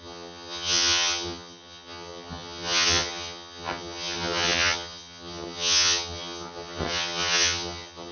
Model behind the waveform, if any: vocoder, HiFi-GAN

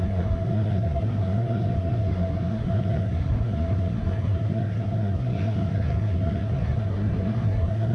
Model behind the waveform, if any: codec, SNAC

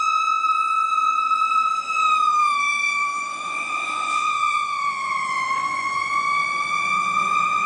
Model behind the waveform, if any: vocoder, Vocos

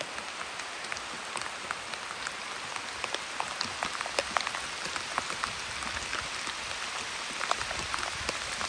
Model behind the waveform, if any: none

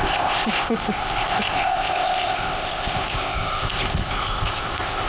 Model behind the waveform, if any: codec, ZipCodec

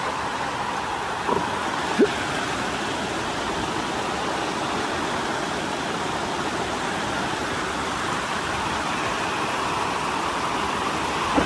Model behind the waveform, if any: none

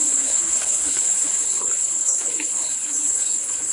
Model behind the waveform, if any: codec, HILCodec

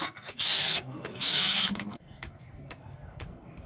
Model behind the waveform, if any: codec, SNAC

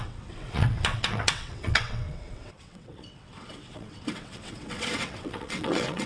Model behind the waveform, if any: vocoder, WaveNeXt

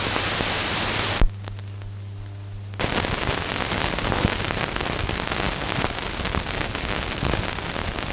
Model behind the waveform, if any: none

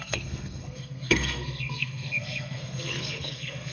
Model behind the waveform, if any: codec, SNAC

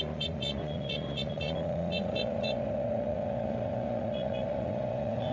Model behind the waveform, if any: vocoder, Vocos